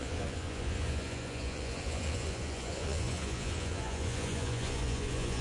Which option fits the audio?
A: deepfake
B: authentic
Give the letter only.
A